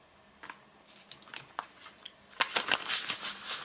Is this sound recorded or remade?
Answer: recorded